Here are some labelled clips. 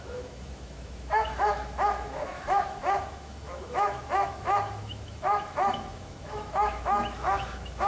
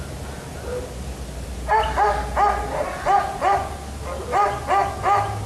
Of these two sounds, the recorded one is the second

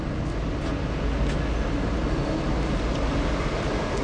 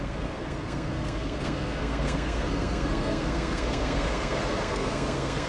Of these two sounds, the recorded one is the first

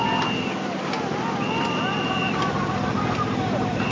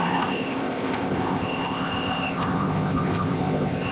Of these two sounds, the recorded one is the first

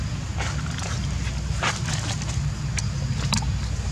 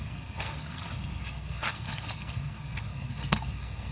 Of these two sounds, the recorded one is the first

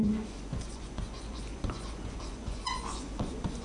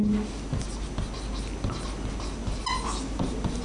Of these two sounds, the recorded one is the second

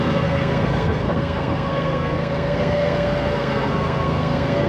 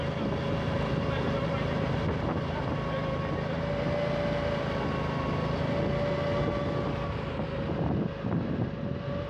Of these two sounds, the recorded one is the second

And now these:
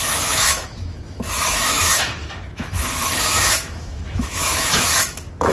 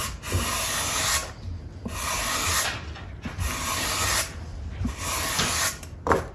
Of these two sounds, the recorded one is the second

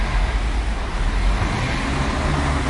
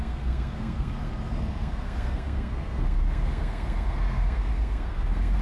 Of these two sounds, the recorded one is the first